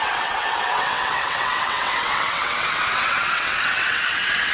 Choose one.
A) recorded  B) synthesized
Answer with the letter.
B